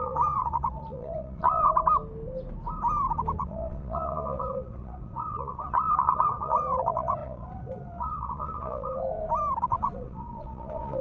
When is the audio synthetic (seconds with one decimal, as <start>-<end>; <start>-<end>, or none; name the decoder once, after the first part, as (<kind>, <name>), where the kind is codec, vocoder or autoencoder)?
0.0-1.7 (vocoder, WaveNeXt); 3.4-9.0; 9.6-11.0